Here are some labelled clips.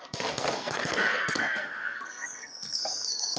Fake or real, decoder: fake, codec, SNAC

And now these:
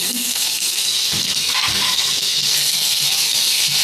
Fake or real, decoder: fake, codec, SNAC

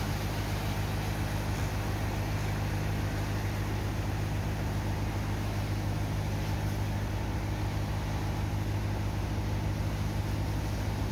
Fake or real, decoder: real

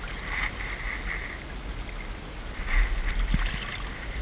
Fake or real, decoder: real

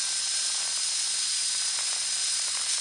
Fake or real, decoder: real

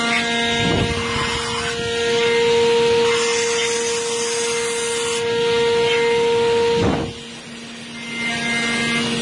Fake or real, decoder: real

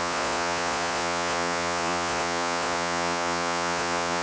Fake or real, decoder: fake, vocoder, Vocos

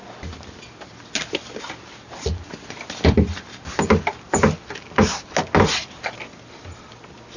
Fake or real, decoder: real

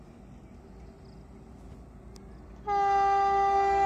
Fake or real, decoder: real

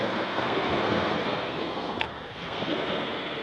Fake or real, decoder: fake, codec, SNAC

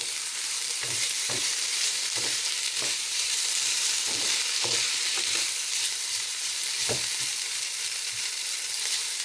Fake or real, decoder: fake, vocoder, BigVGAN v2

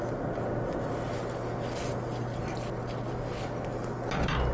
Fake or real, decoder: real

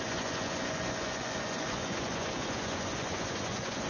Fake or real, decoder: fake, vocoder, Vocos